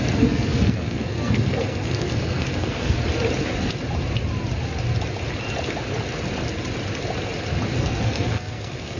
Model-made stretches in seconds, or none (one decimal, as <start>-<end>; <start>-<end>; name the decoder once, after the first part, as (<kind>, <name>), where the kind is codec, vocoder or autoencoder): 0.0-3.0 (codec, SNAC); 7.8-9.0